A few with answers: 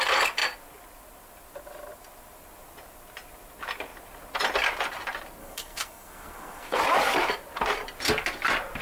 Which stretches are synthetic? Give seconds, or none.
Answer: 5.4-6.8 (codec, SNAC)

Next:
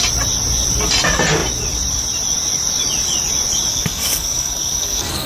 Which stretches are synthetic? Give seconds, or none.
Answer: 3.7-5.3 (codec, SNAC)

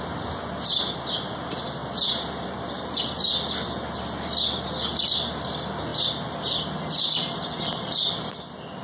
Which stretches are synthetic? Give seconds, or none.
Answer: none

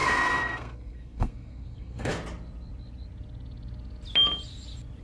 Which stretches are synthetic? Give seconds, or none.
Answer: 0.0-2.1 (codec, SNAC)